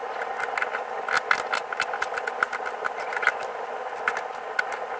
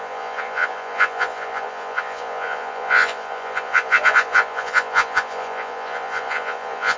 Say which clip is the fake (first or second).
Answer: second